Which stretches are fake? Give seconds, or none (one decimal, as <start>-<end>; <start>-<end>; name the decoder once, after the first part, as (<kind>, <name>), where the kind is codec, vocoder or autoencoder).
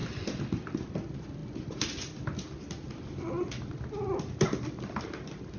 none